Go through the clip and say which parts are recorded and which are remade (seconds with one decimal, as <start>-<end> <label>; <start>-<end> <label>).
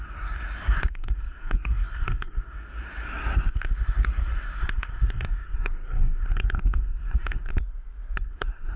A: 0.0-7.5 remade; 7.5-8.2 recorded; 8.2-8.8 remade